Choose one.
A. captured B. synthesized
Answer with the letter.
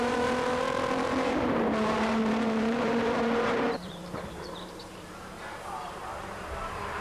B